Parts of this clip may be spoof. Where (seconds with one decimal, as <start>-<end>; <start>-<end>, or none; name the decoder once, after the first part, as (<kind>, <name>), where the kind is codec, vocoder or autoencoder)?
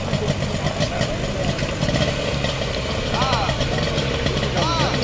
1.4-4.4 (vocoder, BigVGAN v2)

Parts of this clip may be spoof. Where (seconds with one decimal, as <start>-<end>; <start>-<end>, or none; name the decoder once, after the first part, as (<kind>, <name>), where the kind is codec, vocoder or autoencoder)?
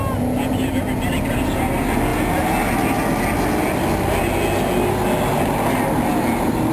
none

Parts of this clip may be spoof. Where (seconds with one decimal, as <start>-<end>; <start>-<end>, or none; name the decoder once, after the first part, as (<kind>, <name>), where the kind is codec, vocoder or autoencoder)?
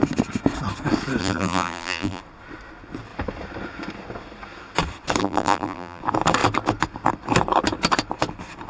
1.2-2.2 (vocoder, BigVGAN v2); 5.2-6.0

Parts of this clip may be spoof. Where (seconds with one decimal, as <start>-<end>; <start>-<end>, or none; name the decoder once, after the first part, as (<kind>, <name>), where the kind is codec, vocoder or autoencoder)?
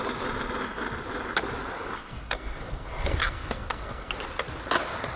2.0-4.1 (codec, SNAC)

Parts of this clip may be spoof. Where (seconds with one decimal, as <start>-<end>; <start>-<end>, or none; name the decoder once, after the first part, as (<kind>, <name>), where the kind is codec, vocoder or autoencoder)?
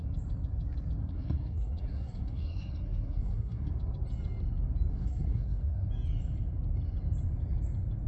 1.0-3.7 (codec, SNAC); 4.9-5.9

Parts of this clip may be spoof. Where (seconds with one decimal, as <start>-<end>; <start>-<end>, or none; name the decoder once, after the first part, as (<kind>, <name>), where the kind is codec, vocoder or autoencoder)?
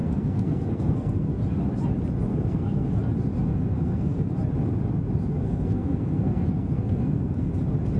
0.0-1.4 (codec, SNAC); 2.3-2.9; 3.5-4.3; 5.3-7.5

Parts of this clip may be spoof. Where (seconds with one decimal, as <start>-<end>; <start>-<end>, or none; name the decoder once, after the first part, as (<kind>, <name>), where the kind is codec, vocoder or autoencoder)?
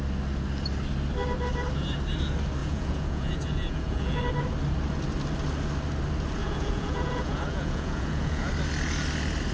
2.6-4.2 (vocoder, Vocos); 6.4-8.5